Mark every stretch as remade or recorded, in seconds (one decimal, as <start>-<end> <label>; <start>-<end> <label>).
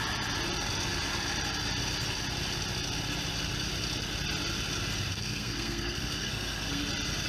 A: 0.0-5.1 recorded; 5.1-6.8 remade; 6.8-7.3 recorded